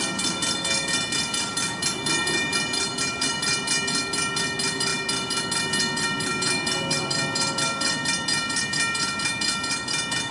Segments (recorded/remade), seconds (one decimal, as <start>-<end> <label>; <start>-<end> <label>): 0.0-10.3 recorded